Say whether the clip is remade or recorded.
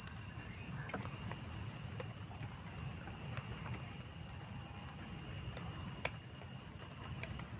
recorded